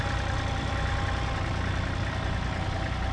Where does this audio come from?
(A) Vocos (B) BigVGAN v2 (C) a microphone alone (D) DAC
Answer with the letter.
C